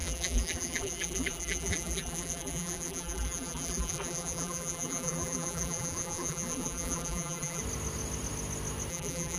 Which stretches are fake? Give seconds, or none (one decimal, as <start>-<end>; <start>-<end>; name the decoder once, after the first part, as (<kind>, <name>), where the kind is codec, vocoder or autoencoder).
0.0-7.6 (vocoder, BigVGAN v2); 8.9-9.4